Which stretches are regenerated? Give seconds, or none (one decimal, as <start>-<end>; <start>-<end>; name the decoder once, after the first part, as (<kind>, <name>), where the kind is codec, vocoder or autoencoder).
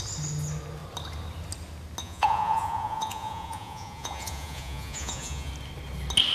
2.0-5.5 (vocoder, Vocos)